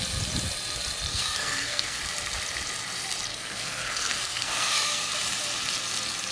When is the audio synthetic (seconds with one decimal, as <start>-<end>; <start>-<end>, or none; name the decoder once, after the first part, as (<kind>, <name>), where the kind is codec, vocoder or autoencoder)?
1.1-2.0 (codec, SNAC); 3.3-5.1